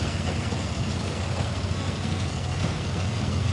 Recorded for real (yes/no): no